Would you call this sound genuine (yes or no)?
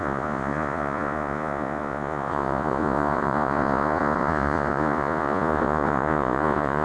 no